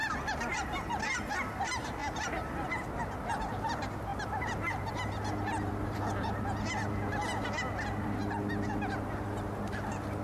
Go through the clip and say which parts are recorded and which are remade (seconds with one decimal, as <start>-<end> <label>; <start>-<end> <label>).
0.0-1.1 remade; 1.1-4.1 recorded; 4.1-4.9 remade; 4.9-10.2 recorded